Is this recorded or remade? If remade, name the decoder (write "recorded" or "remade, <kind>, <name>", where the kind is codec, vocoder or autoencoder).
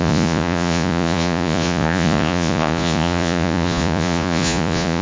remade, vocoder, Vocos